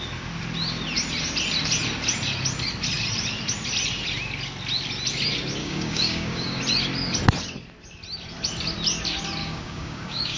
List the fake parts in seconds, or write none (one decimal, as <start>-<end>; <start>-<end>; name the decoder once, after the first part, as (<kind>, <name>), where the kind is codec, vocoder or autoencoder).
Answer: 5.6-6.6 (codec, DAC); 9.4-10.4